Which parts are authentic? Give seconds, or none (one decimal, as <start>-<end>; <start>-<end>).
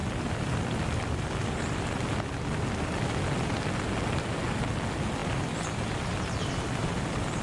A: 1.3-5.2